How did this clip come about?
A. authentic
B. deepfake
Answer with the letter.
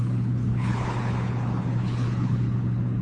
B